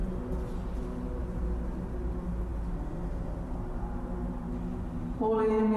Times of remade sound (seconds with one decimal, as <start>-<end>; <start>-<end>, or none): none